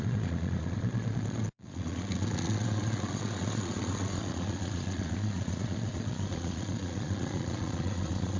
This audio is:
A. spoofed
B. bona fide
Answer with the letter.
A